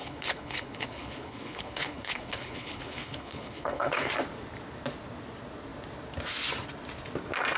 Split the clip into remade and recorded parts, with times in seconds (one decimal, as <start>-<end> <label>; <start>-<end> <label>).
0.0-4.1 remade; 4.1-7.6 recorded